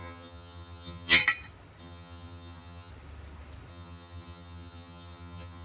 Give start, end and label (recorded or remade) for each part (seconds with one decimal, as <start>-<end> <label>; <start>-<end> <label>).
0.0-1.2 remade; 1.2-1.8 recorded; 1.8-2.9 remade; 2.9-3.7 recorded; 3.7-5.6 remade